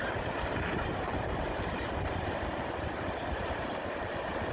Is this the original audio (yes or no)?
no